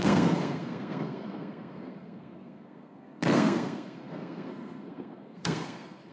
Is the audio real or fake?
fake